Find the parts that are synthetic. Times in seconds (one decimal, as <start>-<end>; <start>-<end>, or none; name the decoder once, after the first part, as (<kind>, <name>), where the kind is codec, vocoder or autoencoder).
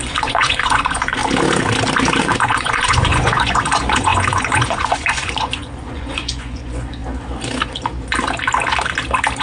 0.0-1.2 (vocoder, Vocos); 2.2-7.0